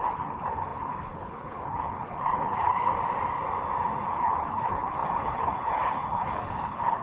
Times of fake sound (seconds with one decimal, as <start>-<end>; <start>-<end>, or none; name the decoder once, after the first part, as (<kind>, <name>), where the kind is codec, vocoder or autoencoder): 0.0-2.9 (codec, HILCodec); 4.1-7.0